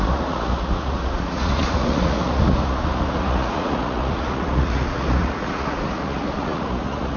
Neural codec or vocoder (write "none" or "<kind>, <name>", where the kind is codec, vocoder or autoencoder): vocoder, Vocos